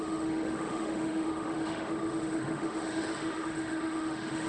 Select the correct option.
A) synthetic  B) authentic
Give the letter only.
A